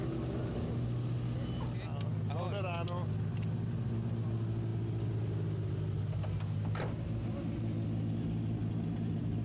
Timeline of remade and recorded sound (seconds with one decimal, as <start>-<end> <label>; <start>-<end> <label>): 0.0-9.4 recorded